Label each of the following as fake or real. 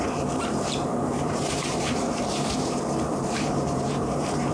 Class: fake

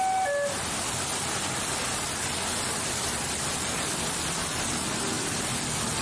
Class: real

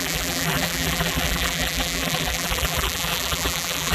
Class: fake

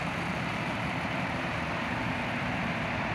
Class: fake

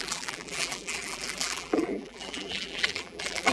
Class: fake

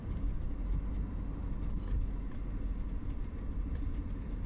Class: real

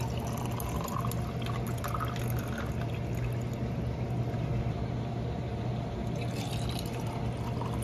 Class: real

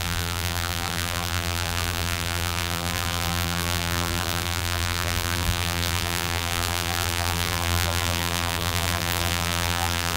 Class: fake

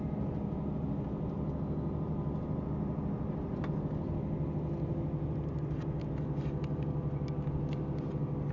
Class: real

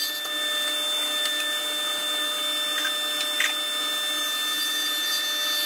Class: real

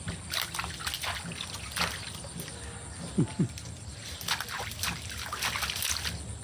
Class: real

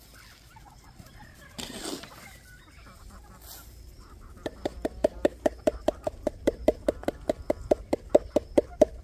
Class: real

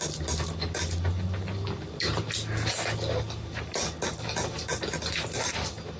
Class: real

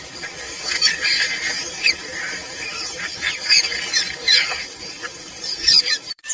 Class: fake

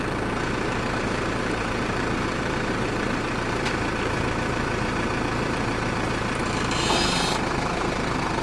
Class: fake